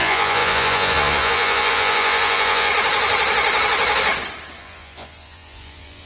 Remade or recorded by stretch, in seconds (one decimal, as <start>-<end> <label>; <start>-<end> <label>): 0.0-2.7 remade; 2.7-4.6 recorded; 4.6-6.1 remade